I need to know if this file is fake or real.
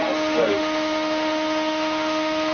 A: fake